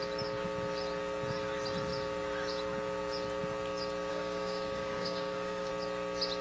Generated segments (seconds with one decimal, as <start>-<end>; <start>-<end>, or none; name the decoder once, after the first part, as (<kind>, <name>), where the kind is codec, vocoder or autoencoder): 4.1-5.7 (codec, DAC)

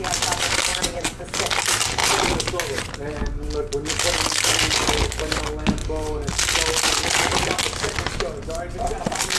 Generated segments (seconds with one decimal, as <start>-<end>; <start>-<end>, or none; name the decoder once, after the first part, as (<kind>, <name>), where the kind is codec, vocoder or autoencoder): 0.7-1.4 (vocoder, Vocos)

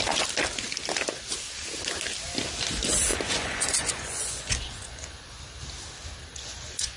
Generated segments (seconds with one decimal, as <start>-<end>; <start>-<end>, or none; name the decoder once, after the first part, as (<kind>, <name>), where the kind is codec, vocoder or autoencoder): 3.1-5.4 (vocoder, Vocos); 6.3-7.0

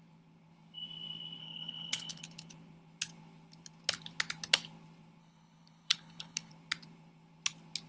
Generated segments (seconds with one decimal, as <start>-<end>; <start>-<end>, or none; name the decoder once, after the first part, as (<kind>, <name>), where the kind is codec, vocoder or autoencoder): 1.4-2.2 (codec, HILCodec); 5.2-6.5

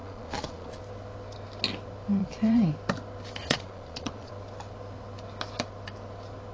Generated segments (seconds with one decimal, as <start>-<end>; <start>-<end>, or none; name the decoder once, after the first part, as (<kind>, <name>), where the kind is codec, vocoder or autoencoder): 0.0-0.8 (vocoder, Vocos); 2.2-2.7; 3.4-4.3

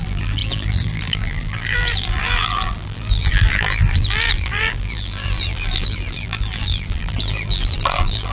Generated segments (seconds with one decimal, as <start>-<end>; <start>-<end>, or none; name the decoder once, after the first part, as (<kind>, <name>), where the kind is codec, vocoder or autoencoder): 0.0-8.3 (vocoder, BigVGAN v2)

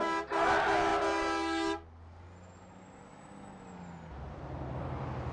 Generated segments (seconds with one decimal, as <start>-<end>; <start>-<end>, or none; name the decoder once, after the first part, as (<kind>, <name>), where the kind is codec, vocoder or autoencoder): none